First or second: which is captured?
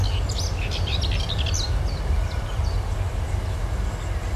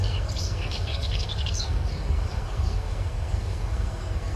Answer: first